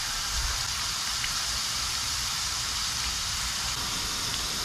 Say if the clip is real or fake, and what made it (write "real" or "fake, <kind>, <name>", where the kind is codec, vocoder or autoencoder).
real